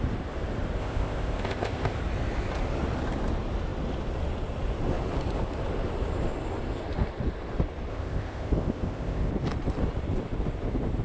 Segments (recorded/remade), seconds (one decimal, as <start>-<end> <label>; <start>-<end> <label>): 0.0-0.8 recorded; 0.8-2.0 remade; 2.0-7.9 recorded; 7.9-9.3 remade; 9.3-11.0 recorded